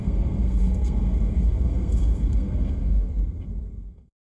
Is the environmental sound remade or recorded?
remade